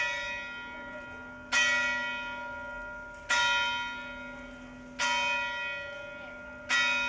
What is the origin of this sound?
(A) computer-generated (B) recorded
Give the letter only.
B